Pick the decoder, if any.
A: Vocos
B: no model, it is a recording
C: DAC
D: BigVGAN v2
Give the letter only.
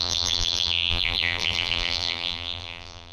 D